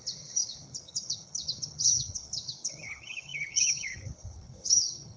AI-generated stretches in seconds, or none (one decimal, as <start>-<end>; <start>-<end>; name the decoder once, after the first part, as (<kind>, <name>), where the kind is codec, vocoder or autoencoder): 0.0-5.2 (codec, HILCodec)

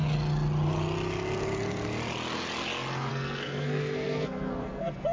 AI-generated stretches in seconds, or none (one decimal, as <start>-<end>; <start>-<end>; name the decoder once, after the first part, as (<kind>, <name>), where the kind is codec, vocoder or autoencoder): 3.1-5.1 (codec, SNAC)

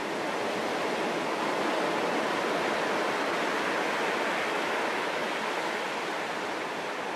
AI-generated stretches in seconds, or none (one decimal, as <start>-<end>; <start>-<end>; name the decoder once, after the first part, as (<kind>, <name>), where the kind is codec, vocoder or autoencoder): none

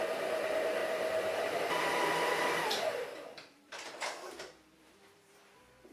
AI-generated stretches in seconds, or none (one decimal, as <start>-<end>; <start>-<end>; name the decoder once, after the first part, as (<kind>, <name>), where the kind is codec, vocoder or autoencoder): 0.8-4.3 (vocoder, BigVGAN v2)

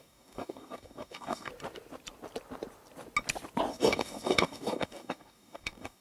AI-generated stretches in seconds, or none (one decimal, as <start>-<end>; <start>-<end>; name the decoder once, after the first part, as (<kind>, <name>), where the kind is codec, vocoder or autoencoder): 0.0-1.5 (codec, DAC); 3.7-6.0

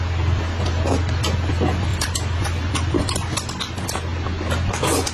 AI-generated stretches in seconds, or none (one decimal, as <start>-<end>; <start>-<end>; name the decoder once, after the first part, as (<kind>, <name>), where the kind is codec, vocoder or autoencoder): 1.9-3.5 (vocoder, BigVGAN v2)

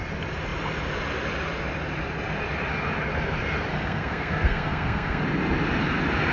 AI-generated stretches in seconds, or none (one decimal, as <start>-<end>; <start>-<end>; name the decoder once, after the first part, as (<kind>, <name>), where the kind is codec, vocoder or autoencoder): 3.7-5.2 (codec, SNAC)

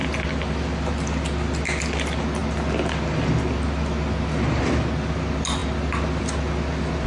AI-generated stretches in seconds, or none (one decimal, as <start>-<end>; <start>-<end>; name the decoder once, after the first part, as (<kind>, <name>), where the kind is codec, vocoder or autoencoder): none